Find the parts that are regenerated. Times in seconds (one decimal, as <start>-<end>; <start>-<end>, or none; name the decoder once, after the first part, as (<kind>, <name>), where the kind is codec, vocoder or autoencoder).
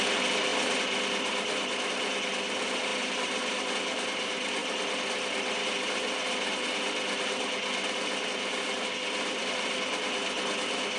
none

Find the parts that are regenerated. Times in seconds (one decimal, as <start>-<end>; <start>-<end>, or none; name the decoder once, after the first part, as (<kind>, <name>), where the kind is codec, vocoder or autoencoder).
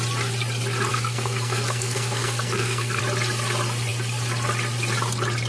0.9-3.0 (codec, SNAC)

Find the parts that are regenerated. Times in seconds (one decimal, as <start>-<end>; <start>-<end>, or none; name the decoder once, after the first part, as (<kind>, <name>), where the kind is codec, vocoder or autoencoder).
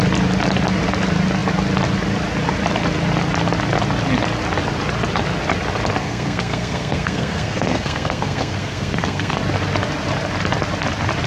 6.0-9.4 (codec, SNAC)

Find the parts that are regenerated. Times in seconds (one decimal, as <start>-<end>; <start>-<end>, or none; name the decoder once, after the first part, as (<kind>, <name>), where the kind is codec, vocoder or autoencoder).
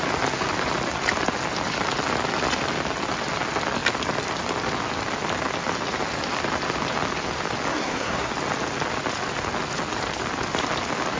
7.7-8.3 (codec, SNAC)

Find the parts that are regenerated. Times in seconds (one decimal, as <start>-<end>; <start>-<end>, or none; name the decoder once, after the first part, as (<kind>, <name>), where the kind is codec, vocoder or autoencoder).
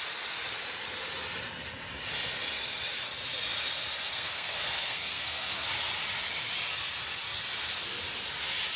4.1-5.6 (codec, SNAC)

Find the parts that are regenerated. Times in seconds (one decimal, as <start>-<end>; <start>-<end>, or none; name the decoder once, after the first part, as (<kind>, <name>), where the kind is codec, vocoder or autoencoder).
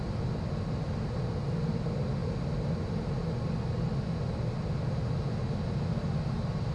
none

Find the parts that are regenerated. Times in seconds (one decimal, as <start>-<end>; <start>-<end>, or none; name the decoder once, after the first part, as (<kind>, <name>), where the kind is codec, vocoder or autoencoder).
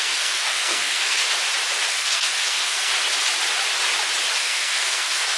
0.0-1.2 (codec, SNAC); 1.9-2.9; 4.4-5.4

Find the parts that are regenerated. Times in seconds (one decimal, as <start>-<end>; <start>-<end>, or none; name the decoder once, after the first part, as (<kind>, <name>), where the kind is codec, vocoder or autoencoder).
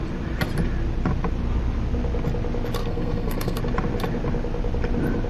2.8-3.6 (codec, SNAC)